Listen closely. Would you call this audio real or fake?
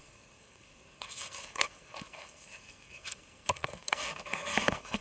fake